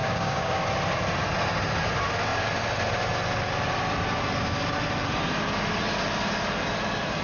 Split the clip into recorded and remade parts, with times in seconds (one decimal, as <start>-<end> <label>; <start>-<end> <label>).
0.0-0.6 remade; 0.6-7.2 recorded